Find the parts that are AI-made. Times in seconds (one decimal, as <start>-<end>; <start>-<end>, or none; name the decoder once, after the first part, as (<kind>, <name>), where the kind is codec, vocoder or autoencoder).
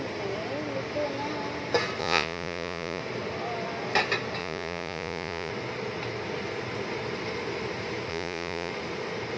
2.0-3.0 (vocoder, Vocos); 4.4-5.5; 8.1-8.7